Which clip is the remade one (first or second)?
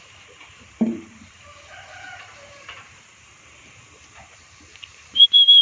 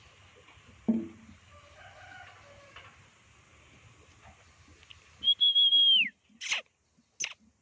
first